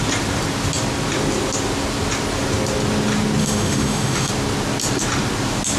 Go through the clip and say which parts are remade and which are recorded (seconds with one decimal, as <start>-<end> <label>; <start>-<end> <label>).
0.0-3.4 recorded; 3.4-4.3 remade; 4.3-5.8 recorded